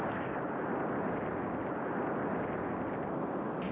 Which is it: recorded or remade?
recorded